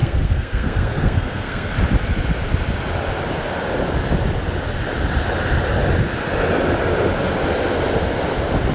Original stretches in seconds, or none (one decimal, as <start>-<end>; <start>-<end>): 1.7-8.7